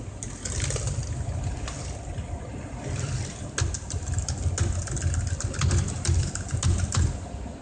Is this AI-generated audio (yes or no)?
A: no